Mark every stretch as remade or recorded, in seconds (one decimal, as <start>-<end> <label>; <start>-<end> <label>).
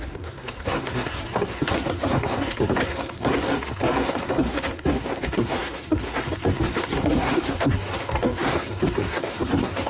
0.0-9.9 remade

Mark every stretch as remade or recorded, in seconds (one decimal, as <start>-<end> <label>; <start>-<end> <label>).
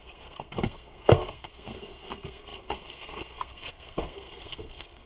0.0-5.1 remade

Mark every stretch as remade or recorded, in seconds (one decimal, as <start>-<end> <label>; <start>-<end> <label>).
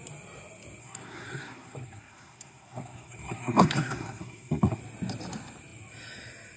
0.0-0.8 recorded; 0.8-4.8 remade; 4.8-6.6 recorded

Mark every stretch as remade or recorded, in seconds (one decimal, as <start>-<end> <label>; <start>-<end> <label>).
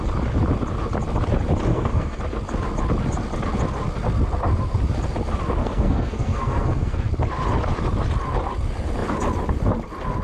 0.0-1.7 recorded; 1.7-2.2 remade; 2.2-5.6 recorded; 5.6-7.1 remade; 7.1-10.2 recorded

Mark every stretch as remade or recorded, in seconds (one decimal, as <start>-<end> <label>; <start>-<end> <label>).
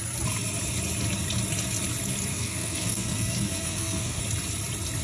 0.0-2.3 recorded; 2.3-4.2 remade; 4.2-5.0 recorded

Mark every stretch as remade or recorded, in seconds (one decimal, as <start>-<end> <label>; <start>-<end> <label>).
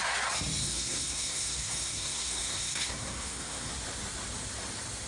0.0-0.6 recorded; 0.6-3.7 remade; 3.7-5.1 recorded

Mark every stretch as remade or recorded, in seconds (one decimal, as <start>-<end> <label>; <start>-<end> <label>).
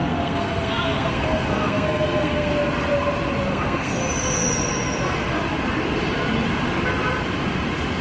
0.0-2.5 remade; 2.5-3.5 recorded; 3.5-4.0 remade; 4.0-8.0 recorded